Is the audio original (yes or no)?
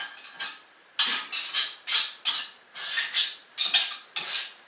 yes